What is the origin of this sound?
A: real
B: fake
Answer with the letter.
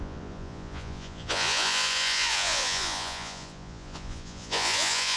B